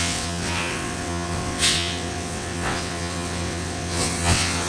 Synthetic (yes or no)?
yes